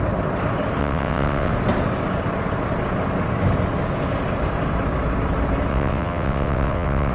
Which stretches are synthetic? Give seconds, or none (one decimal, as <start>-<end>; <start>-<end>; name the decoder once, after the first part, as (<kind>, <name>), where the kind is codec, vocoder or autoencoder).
0.8-1.5 (vocoder, WaveNeXt); 5.7-7.1